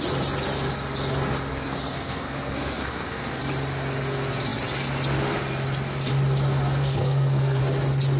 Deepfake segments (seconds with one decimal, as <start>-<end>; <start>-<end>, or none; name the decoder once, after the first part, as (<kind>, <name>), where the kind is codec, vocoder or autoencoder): 1.5-3.4 (codec, SNAC); 6.8-7.6